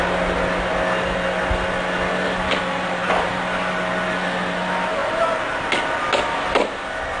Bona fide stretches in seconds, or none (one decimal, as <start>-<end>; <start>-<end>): 0.0-2.1; 3.3-7.2